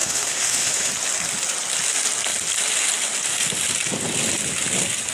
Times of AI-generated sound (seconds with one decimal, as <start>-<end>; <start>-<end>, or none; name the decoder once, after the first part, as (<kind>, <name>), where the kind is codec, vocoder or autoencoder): 0.0-0.9 (autoencoder, DAC-VAE)